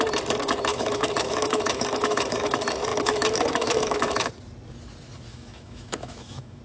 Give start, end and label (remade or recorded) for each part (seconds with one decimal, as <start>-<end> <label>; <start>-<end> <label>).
0.0-0.7 recorded; 0.7-2.5 remade; 2.5-2.9 recorded; 2.9-4.3 remade; 4.3-5.3 recorded; 5.3-6.6 remade